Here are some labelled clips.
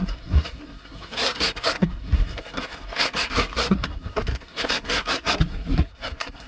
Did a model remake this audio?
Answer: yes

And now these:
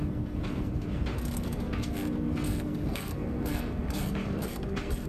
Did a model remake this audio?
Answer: yes